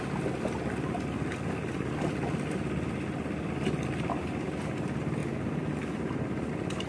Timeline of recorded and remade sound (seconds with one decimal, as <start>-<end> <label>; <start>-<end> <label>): 0.0-6.9 recorded